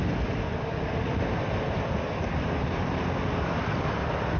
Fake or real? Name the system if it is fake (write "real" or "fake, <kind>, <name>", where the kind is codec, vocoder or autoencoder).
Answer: real